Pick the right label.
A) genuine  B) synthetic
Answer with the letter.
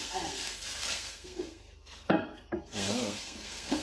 B